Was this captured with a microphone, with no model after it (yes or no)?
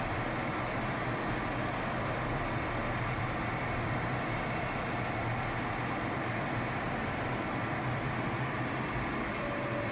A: yes